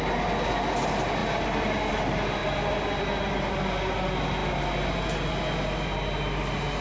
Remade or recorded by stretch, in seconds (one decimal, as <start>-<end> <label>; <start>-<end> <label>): 0.0-6.8 recorded